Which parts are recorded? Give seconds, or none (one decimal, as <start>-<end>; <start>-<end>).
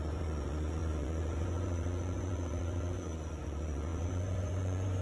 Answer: none